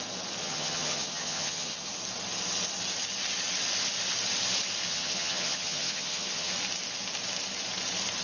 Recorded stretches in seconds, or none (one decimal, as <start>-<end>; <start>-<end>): 0.0-0.4; 1.9-4.9; 6.5-8.2